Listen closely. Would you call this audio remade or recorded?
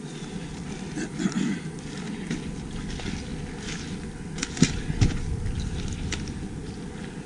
recorded